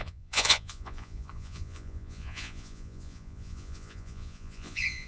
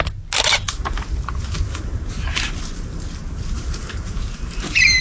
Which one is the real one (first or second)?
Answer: second